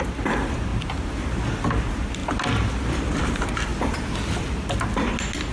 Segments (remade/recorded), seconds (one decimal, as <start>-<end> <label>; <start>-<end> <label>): 0.0-0.7 recorded; 0.7-1.2 remade; 1.2-5.5 recorded